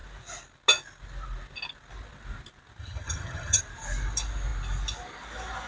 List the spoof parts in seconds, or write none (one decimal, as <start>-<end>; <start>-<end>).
2.8-3.6